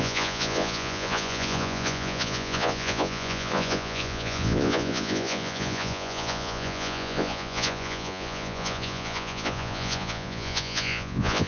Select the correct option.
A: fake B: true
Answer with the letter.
A